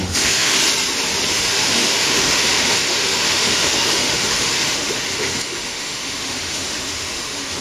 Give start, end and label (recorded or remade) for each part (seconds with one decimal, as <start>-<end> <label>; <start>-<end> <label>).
0.0-0.6 remade; 0.6-1.3 recorded; 1.3-7.6 remade